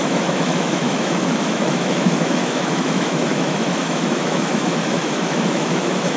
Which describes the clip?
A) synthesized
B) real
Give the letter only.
A